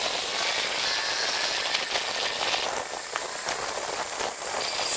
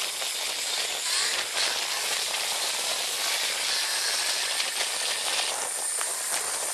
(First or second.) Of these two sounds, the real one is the first